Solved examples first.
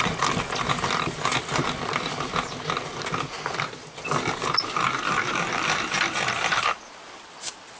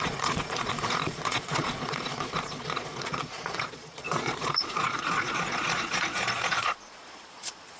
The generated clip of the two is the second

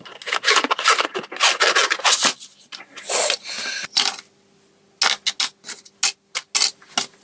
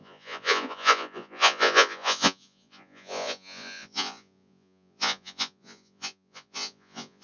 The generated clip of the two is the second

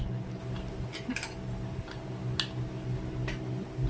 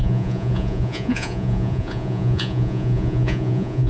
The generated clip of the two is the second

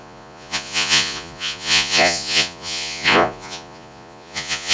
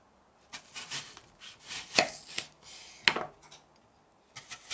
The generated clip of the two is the first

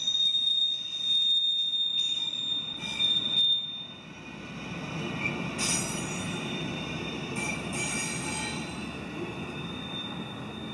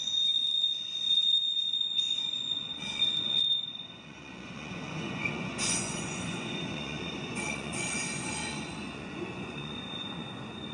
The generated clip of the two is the second